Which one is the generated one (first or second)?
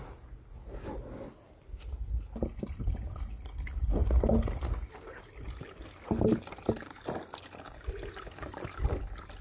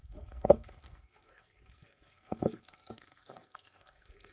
second